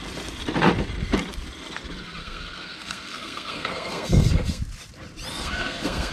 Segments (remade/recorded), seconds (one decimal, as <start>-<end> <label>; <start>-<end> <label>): 0.0-2.2 recorded; 2.2-4.6 remade; 4.6-5.3 recorded; 5.3-6.1 remade

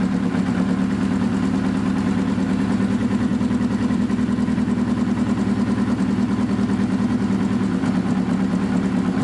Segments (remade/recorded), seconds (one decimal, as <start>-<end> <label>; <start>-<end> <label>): 0.0-9.2 recorded

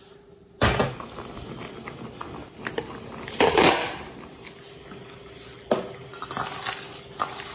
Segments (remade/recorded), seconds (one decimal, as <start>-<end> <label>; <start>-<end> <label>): 0.0-7.5 recorded

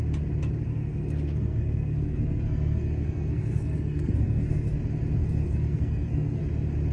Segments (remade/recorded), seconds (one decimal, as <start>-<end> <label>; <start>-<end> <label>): 0.0-0.7 recorded; 0.7-4.8 remade; 4.8-5.2 recorded; 5.2-6.4 remade; 6.4-6.9 recorded

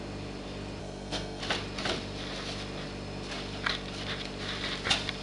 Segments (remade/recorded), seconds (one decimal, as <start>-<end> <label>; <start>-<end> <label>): 0.0-0.8 recorded; 0.8-1.4 remade; 1.4-5.2 recorded

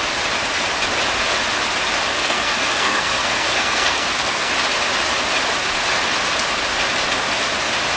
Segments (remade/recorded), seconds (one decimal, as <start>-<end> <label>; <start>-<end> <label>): 0.0-2.1 recorded; 2.1-4.5 remade; 4.5-8.0 recorded

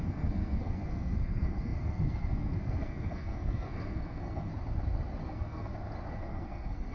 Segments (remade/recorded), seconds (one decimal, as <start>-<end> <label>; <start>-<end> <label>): 0.0-4.5 remade; 4.5-5.2 recorded; 5.2-5.7 remade; 5.7-6.2 recorded; 6.2-6.9 remade